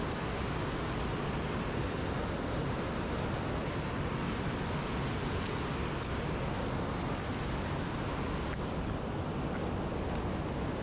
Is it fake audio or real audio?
real